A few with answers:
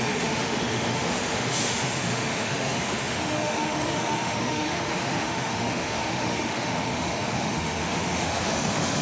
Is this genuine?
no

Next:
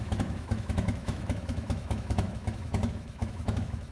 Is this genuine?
no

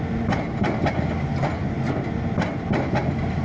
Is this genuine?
yes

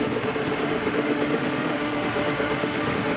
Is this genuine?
no